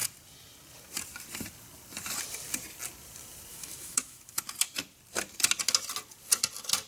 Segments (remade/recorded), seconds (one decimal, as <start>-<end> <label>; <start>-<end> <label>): 0.0-3.5 recorded; 3.5-4.4 remade; 4.4-6.9 recorded